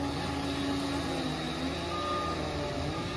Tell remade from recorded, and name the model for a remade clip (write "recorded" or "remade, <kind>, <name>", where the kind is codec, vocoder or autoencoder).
recorded